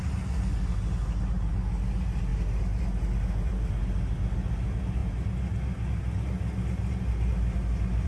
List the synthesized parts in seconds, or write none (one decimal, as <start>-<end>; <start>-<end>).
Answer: none

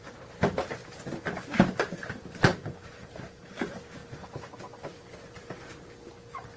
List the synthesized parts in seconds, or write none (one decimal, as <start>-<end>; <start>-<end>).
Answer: 0.0-0.8; 2.0-4.0; 5.3-5.7